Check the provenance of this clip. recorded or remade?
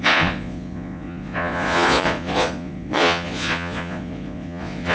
remade